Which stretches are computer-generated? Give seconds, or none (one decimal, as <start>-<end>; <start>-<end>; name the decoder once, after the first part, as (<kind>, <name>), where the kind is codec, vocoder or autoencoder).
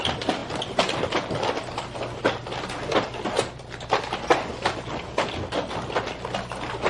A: none